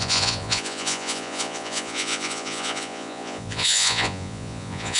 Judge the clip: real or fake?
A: fake